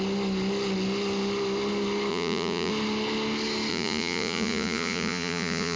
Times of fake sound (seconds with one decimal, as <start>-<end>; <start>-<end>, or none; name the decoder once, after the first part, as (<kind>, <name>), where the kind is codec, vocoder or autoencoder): 2.1-2.7 (vocoder, Vocos); 3.7-5.8